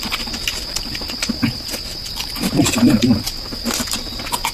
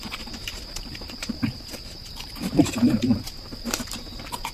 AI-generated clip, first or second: second